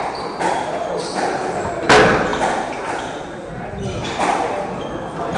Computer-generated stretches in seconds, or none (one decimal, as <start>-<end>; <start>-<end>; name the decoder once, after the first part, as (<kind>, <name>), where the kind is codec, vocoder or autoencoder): none